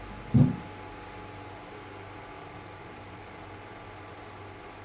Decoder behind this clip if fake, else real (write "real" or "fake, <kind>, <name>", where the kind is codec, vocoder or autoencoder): real